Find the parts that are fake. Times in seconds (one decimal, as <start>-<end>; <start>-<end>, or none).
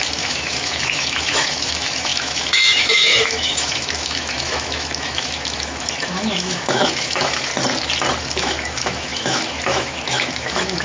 0.0-7.5; 8.2-10.8